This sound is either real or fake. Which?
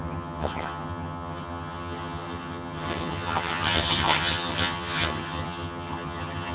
fake